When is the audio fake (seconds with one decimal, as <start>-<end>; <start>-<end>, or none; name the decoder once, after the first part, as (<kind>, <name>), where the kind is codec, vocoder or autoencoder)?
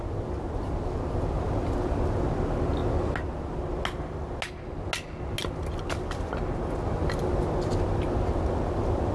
none